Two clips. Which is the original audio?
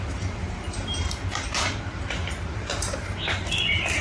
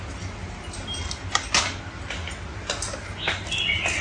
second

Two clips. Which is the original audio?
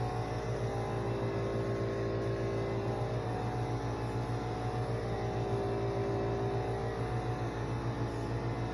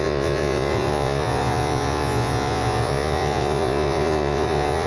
first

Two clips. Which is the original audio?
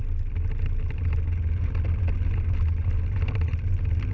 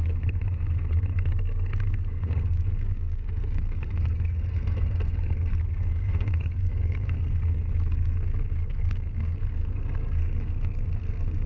first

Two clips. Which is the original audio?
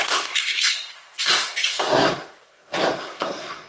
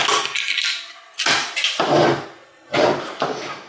second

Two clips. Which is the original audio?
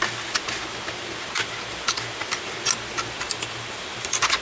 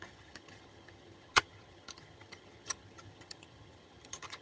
first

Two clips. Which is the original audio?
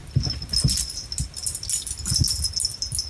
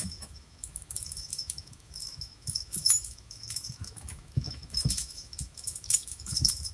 first